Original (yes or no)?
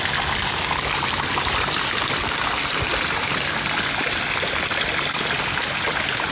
yes